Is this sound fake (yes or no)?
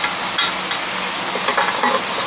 no